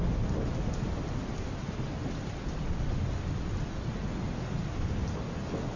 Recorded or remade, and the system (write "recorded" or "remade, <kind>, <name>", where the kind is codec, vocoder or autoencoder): recorded